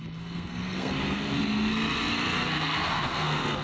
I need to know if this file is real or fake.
fake